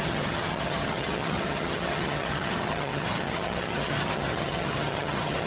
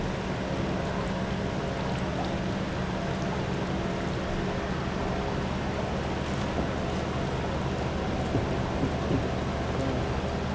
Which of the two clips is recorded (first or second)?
second